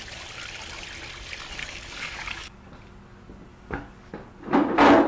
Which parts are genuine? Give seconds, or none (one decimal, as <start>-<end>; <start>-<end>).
0.0-1.6; 2.7-3.5; 4.1-5.1